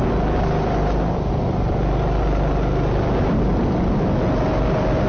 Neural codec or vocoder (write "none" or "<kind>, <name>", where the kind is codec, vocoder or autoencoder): none